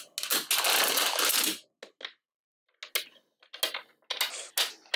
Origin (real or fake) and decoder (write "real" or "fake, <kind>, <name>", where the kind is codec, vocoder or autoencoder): real